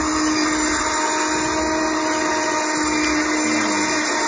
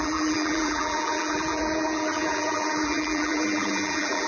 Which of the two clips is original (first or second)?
first